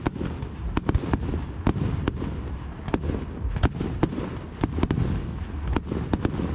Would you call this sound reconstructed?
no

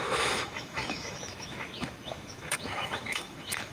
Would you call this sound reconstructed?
yes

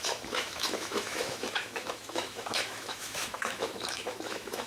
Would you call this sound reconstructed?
yes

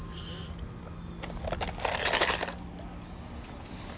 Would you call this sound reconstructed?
no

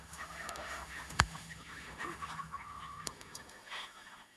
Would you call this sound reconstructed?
yes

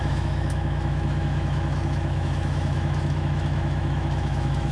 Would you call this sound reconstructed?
yes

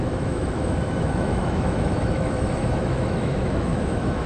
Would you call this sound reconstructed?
yes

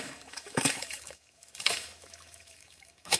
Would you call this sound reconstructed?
yes